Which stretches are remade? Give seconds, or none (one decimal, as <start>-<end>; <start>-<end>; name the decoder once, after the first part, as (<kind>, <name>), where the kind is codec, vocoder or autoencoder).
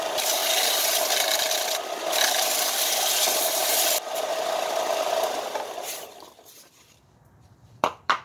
0.0-0.4 (vocoder, BigVGAN v2); 1.1-8.2